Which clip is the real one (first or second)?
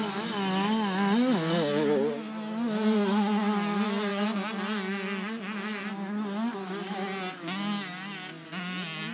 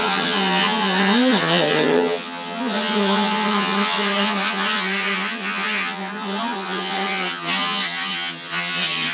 first